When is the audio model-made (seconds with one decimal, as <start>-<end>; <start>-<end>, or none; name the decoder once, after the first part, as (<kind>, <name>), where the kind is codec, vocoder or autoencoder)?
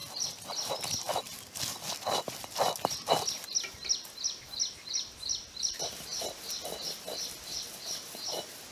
none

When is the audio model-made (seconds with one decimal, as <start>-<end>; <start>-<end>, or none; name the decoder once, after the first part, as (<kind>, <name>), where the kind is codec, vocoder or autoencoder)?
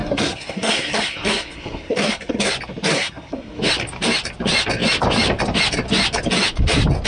0.0-2.5 (codec, SNAC); 2.9-3.6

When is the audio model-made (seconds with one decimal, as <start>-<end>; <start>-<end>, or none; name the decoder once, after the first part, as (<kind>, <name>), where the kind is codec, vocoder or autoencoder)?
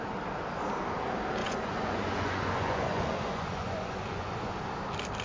1.4-4.5 (vocoder, Vocos)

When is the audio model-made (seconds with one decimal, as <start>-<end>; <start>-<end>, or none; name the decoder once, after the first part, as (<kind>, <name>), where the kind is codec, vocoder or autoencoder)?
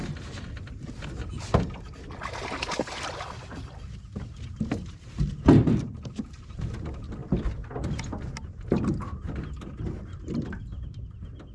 none